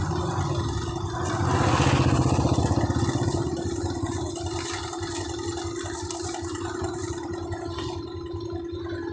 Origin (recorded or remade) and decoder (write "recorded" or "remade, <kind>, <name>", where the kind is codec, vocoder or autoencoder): recorded